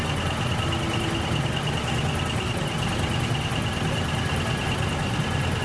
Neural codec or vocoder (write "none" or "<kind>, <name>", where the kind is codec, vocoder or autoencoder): none